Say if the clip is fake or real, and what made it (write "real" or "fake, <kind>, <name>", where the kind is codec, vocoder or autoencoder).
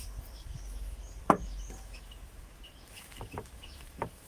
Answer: fake, autoencoder, DAC-VAE